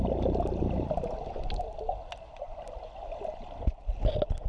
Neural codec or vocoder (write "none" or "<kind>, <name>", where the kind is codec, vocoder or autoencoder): none